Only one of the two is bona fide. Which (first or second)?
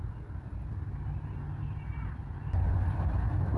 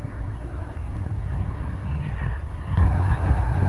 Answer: first